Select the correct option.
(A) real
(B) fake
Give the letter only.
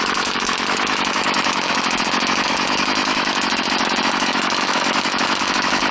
B